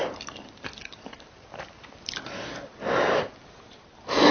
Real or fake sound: real